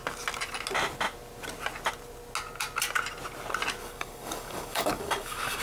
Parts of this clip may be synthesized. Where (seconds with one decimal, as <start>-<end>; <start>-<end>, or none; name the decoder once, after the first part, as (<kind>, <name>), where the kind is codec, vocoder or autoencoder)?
3.8-5.6 (codec, DAC)